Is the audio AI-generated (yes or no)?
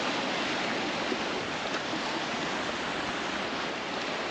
no